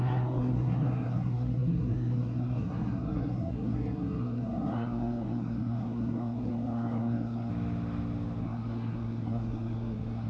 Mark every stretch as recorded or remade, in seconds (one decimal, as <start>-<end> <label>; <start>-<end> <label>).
0.0-7.5 remade; 7.5-8.4 recorded; 8.4-10.3 remade